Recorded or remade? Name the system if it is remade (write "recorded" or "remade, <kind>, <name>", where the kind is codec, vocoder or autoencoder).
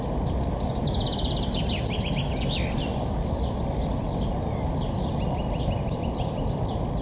recorded